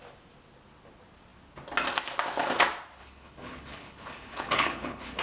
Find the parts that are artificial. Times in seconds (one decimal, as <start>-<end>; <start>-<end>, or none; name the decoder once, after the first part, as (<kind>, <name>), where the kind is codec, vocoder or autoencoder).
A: 3.0-5.2 (codec, HILCodec)